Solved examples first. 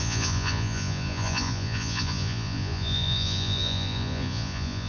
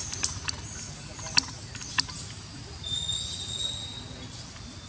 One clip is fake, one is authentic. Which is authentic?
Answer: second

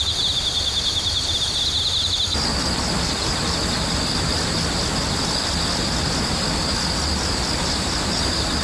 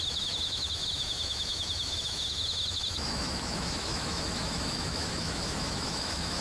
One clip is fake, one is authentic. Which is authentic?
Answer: first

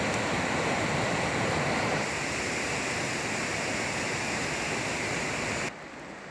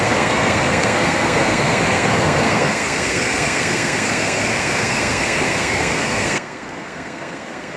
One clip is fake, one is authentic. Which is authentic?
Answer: first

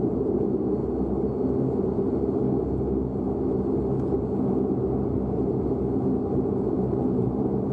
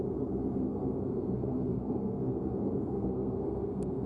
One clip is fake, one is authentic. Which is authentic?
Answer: first